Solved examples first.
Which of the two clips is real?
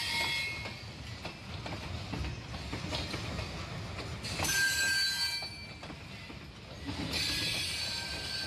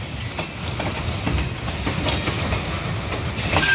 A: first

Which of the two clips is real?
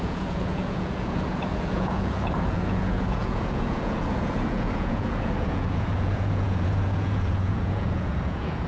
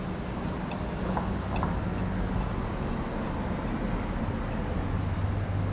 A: second